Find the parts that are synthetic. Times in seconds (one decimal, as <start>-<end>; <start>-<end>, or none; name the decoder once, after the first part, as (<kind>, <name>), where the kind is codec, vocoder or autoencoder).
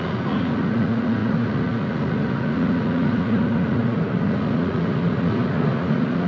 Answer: 0.0-6.3 (vocoder, Vocos)